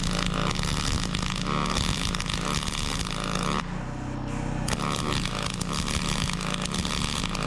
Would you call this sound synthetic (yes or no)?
no